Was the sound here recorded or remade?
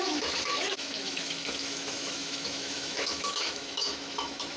remade